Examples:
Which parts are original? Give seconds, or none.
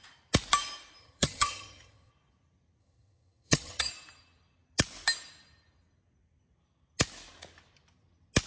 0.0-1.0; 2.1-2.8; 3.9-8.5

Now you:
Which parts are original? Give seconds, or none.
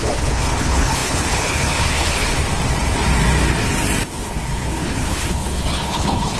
2.4-4.0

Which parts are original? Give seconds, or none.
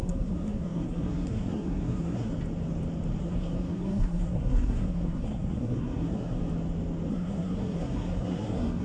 2.3-3.2; 6.4-7.1